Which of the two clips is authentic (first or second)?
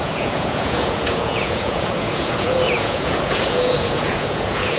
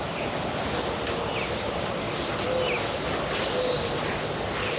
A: second